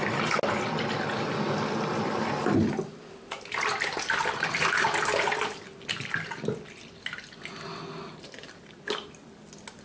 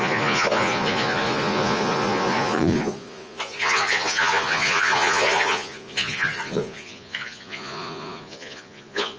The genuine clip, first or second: first